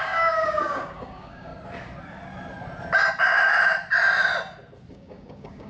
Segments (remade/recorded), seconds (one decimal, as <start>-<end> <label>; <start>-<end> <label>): 0.0-1.5 remade; 1.5-4.9 recorded; 4.9-5.7 remade